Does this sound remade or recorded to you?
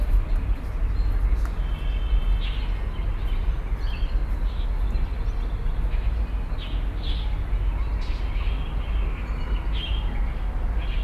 recorded